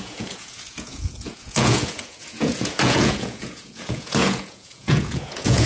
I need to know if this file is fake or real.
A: fake